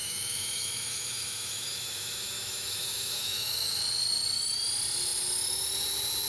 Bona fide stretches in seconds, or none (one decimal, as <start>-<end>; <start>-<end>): 3.8-6.3